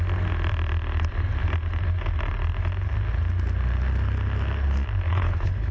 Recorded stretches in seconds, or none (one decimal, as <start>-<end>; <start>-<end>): 0.0-5.1